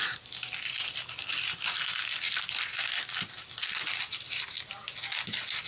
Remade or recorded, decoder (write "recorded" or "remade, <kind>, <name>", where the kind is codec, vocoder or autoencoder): recorded